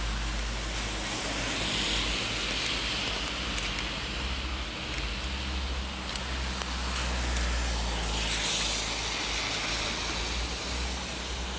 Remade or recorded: recorded